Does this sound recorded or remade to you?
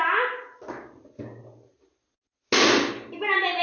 recorded